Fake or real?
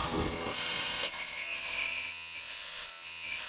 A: fake